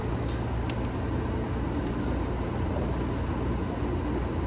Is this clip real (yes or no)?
yes